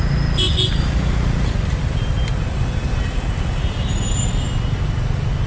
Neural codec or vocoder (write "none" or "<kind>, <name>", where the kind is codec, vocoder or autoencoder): none